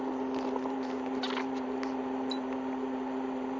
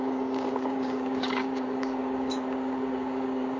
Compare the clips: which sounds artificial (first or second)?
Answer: second